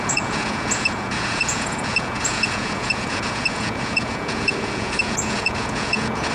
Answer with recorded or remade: remade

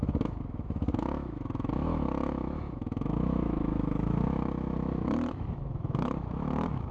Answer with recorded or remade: remade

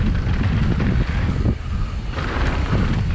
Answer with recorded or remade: recorded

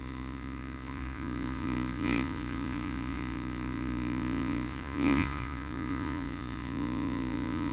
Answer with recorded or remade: remade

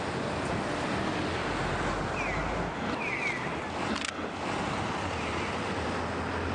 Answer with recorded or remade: recorded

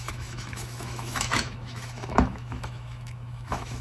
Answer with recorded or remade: remade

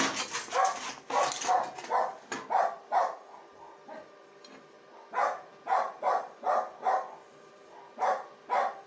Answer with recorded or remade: recorded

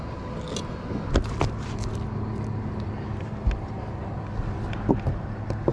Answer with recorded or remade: recorded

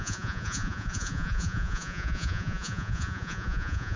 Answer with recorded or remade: remade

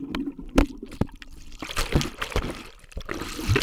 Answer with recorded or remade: recorded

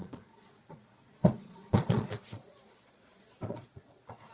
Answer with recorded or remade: remade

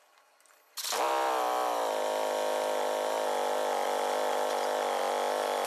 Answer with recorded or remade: recorded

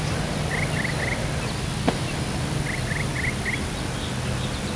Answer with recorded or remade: recorded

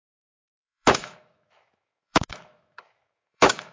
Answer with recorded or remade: remade